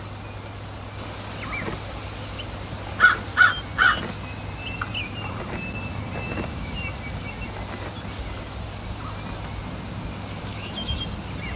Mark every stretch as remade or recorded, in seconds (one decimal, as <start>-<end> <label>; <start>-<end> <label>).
0.0-10.5 recorded; 10.5-11.0 remade; 11.0-11.6 recorded